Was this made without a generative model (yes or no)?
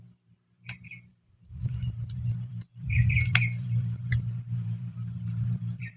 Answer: no